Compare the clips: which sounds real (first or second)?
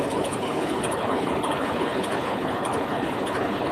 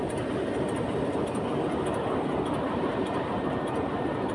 second